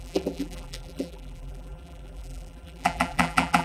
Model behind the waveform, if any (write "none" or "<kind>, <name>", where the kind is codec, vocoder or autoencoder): vocoder, BigVGAN v2